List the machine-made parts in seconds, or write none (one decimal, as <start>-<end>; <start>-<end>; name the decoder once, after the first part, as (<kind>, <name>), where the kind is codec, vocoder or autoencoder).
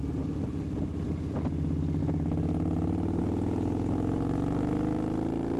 2.0-3.2 (vocoder, BigVGAN v2)